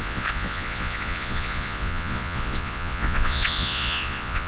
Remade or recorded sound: remade